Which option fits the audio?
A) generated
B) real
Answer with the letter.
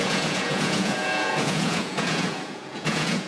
A